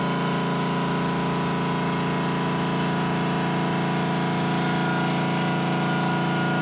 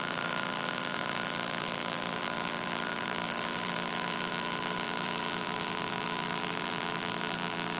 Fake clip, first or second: second